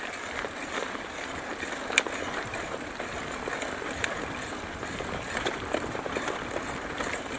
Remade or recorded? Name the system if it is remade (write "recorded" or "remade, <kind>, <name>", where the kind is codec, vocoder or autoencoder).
remade, vocoder, BigVGAN v2